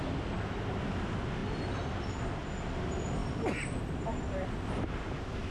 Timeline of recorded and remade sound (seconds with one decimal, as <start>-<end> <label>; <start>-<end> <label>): 0.0-1.4 recorded; 1.4-2.6 remade; 2.6-5.5 recorded